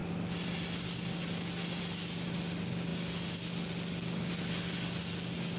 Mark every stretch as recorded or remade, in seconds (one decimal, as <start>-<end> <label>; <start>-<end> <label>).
0.0-5.6 recorded